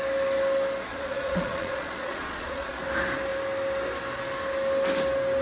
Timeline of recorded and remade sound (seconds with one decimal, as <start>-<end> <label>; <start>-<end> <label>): 0.0-0.9 recorded; 0.9-2.7 remade; 2.7-5.4 recorded